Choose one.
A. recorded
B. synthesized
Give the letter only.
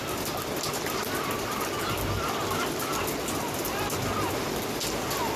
A